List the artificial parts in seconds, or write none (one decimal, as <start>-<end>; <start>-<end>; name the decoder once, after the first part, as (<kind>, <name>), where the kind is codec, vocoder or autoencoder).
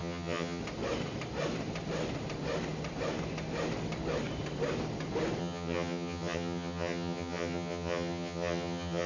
0.0-0.6 (vocoder, HiFi-GAN); 5.4-9.1